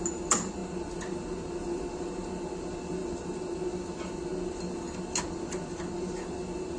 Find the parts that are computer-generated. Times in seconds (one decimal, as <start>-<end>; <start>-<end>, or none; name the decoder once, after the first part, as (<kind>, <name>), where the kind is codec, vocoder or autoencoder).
none